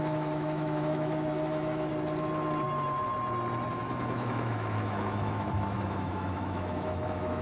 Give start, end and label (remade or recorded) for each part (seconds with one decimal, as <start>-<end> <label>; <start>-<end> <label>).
0.0-1.9 remade; 1.9-3.7 recorded; 3.7-7.4 remade